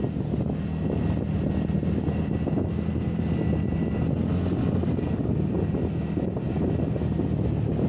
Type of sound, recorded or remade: recorded